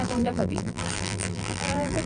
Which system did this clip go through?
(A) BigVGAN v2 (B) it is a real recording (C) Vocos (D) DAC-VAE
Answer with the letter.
A